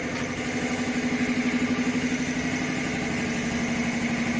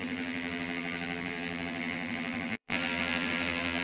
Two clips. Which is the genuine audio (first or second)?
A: first